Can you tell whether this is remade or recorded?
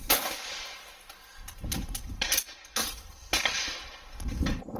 recorded